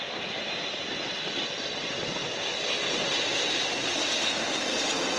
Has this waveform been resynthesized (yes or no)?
no